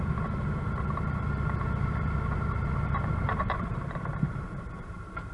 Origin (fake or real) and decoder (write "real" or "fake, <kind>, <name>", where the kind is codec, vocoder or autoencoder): fake, vocoder, BigVGAN v2